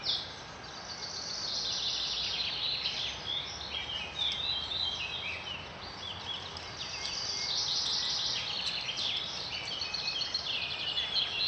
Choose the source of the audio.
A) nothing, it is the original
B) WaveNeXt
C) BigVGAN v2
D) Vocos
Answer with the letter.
A